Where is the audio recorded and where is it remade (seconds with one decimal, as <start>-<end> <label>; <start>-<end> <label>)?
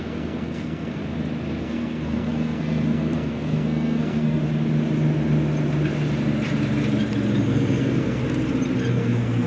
0.0-1.0 remade; 1.0-1.6 recorded; 1.6-4.4 remade; 4.4-7.5 recorded; 7.5-8.2 remade; 8.2-8.9 recorded; 8.9-9.5 remade